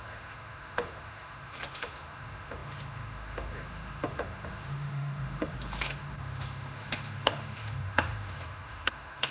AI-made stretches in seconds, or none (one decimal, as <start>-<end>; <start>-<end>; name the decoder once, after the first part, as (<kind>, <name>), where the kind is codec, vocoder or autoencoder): 0.0-9.3 (autoencoder, DAC-VAE)